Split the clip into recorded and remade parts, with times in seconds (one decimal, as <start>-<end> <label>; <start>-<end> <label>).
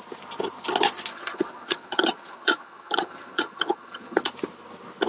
0.0-1.1 recorded; 1.1-4.2 remade; 4.2-5.1 recorded